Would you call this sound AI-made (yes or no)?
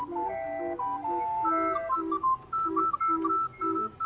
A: no